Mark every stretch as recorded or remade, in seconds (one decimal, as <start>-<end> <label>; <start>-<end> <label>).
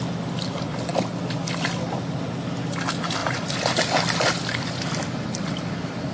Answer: 0.0-0.9 recorded; 0.9-2.0 remade; 2.0-3.2 recorded; 3.2-6.1 remade